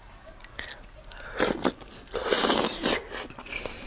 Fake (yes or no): no